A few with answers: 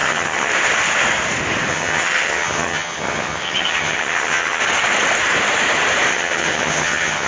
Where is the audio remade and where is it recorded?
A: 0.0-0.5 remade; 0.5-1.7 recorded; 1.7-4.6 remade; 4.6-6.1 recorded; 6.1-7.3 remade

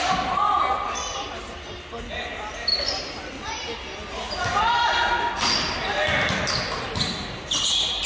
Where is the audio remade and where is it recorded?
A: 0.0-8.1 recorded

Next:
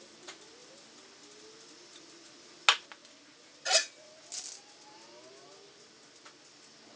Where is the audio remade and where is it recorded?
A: 0.0-7.0 recorded

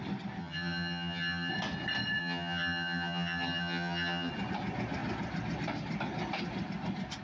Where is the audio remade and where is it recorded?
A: 0.0-0.4 recorded; 0.4-1.5 remade; 1.5-2.2 recorded; 2.2-4.3 remade; 4.3-7.2 recorded

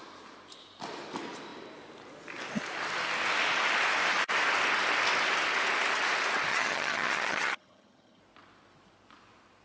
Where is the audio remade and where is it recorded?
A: 0.0-6.5 recorded; 6.5-8.2 remade; 8.2-9.6 recorded

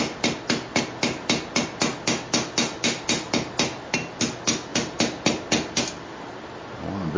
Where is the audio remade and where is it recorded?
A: 0.0-7.2 recorded